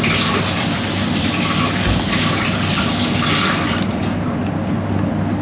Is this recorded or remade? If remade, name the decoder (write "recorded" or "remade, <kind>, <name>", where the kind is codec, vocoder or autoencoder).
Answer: recorded